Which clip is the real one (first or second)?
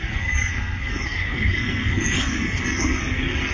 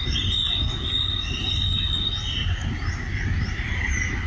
second